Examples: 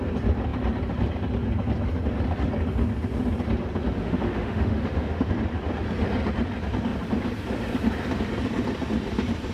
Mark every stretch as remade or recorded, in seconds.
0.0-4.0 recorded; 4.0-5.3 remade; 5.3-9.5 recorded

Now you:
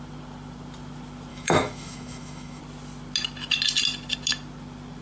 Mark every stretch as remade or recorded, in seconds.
0.0-1.3 recorded; 1.3-2.6 remade; 2.6-5.0 recorded

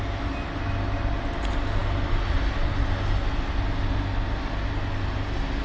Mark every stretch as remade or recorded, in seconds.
0.0-5.6 recorded